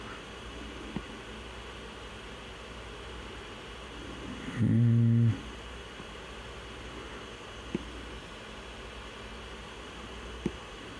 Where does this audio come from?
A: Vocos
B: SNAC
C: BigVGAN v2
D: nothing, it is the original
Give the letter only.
D